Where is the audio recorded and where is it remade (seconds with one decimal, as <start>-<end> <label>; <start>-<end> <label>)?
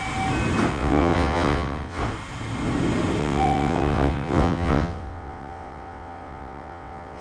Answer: 0.0-0.7 recorded; 0.7-2.0 remade; 2.0-3.2 recorded; 3.2-7.2 remade